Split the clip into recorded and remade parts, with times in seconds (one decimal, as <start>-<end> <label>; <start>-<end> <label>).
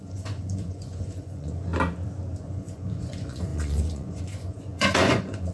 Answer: 0.0-1.7 remade; 1.7-2.4 recorded; 2.4-5.5 remade